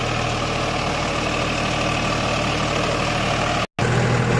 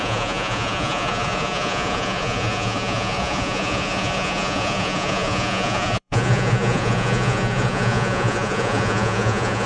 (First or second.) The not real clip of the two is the second